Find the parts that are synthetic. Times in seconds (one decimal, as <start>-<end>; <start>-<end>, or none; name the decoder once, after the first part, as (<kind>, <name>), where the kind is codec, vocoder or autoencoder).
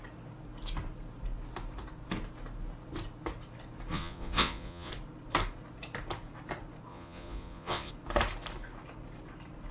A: 3.9-4.9 (vocoder, Vocos); 6.9-7.9